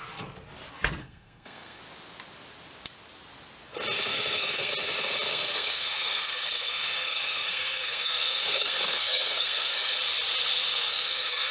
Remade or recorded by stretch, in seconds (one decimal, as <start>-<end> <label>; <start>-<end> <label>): 0.0-1.0 recorded; 1.0-1.8 remade; 1.8-4.1 recorded; 4.1-4.7 remade; 4.7-5.3 recorded; 5.3-10.0 remade; 10.0-10.8 recorded; 10.8-11.5 remade

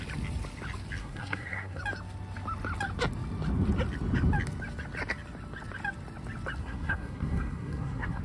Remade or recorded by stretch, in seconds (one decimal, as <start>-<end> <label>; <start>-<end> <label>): 0.0-1.0 recorded; 1.0-1.8 remade; 1.8-6.6 recorded; 6.6-8.2 remade